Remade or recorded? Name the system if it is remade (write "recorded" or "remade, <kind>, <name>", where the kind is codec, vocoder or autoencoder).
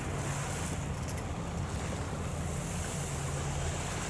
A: recorded